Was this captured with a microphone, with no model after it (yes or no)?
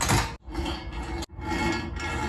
yes